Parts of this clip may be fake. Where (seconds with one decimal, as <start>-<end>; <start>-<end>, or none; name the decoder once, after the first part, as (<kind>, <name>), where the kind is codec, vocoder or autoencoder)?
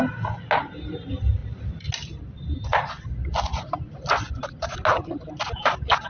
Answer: none